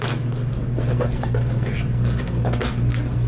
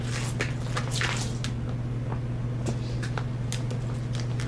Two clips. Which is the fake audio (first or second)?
first